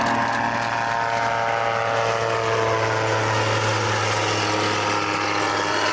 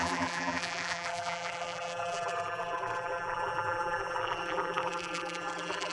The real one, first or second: first